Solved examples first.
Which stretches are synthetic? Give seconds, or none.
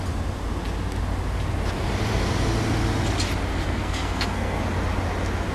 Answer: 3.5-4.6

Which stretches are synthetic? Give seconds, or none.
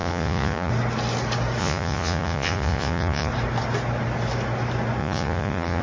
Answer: 0.0-0.7; 1.6-3.3; 5.0-5.8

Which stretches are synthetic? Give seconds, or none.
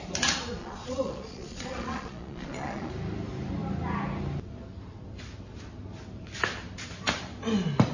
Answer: 0.6-2.9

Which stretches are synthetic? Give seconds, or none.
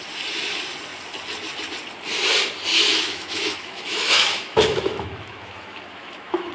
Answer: 2.7-6.5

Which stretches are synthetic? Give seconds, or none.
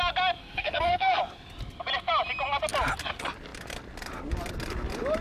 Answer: 0.4-1.2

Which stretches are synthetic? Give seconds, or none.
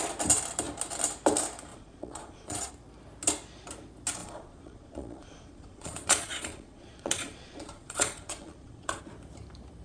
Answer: 1.7-2.7; 4.2-9.0